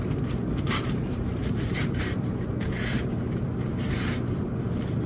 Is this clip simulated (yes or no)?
yes